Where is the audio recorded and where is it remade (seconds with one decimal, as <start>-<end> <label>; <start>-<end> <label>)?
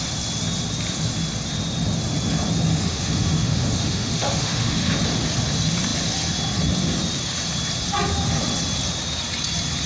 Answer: 0.0-2.7 recorded; 2.7-4.9 remade; 4.9-9.9 recorded